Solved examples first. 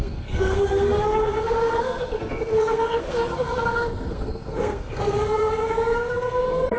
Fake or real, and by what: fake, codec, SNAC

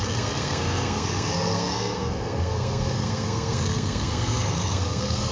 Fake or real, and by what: fake, codec, SNAC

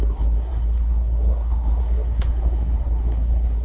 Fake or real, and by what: fake, codec, SNAC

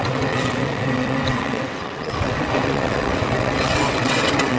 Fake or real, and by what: fake, vocoder, WaveNeXt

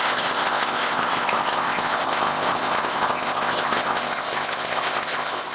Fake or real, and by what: fake, codec, ZipCodec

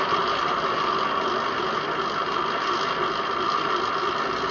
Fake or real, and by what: real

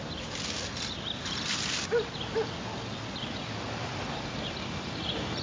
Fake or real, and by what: real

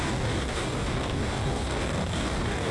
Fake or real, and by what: fake, codec, DAC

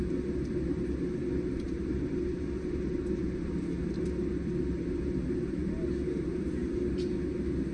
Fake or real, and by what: real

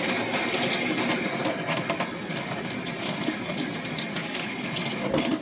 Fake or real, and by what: real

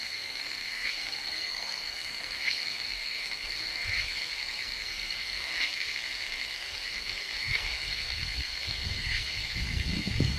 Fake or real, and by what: fake, codec, SNAC